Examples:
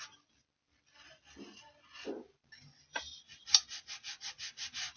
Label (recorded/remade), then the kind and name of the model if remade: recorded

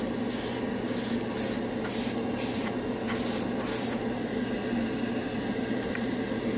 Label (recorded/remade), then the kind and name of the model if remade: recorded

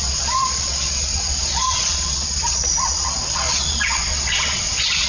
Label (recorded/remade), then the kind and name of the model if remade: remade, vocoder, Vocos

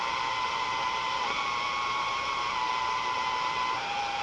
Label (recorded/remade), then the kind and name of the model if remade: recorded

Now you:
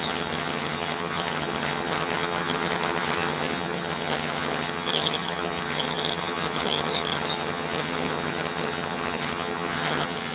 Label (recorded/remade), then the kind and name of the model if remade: remade, vocoder, HiFi-GAN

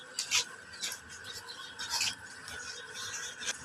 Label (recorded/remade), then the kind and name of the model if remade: recorded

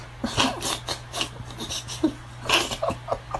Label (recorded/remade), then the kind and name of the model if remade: recorded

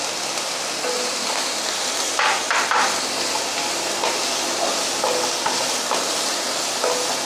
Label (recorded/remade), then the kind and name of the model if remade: recorded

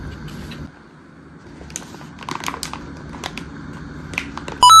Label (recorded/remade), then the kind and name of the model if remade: recorded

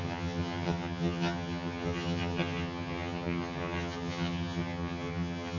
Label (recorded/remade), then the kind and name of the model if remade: remade, vocoder, HiFi-GAN